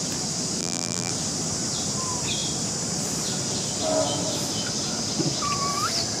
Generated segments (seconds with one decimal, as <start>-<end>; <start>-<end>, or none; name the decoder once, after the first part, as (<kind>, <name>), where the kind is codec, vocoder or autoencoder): 0.6-1.1 (vocoder, BigVGAN v2)